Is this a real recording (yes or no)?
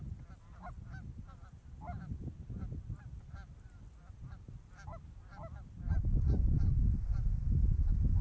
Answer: yes